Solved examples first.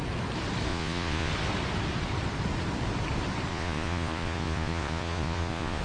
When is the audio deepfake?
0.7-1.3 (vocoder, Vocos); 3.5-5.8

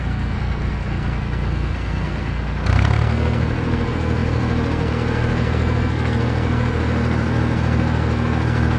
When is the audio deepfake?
0.0-8.8 (codec, SNAC)

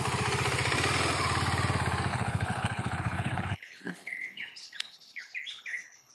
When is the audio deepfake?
2.1-6.1 (codec, HILCodec)

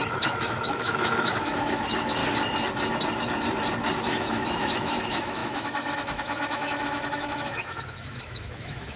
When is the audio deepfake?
0.0-2.2 (autoencoder, DAC-VAE); 4.0-9.0

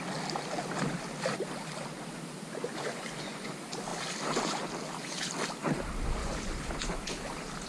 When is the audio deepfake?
2.7-3.5 (vocoder, Vocos); 6.2-6.7

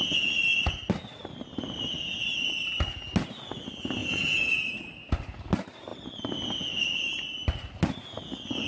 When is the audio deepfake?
4.0-4.6 (vocoder, Vocos)

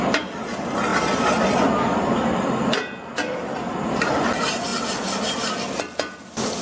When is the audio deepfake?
none

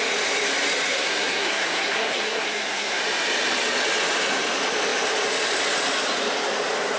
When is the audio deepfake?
0.9-3.0 (codec, SNAC)